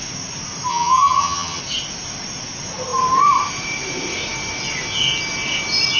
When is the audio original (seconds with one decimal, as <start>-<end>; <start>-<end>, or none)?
0.0-0.7; 1.6-6.0